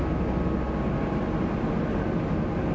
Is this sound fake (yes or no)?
no